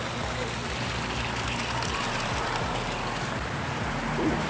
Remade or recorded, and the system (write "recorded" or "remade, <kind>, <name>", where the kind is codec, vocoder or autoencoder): recorded